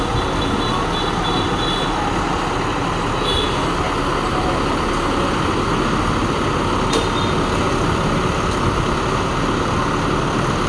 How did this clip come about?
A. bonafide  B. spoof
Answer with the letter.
A